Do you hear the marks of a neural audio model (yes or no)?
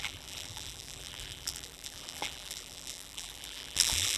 yes